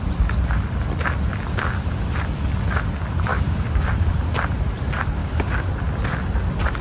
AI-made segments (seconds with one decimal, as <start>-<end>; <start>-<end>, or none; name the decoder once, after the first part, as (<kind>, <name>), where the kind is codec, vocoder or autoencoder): 3.3-4.1 (codec, DAC); 5.2-5.7